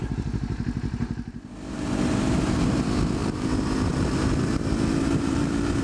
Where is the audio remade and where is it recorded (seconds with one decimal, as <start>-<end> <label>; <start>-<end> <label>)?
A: 0.0-5.8 remade